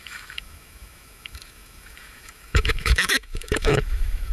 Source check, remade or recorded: remade